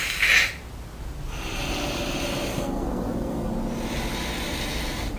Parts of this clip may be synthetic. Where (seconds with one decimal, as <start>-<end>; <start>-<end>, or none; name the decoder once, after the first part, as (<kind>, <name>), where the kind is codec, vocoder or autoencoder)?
2.5-3.5 (codec, SNAC)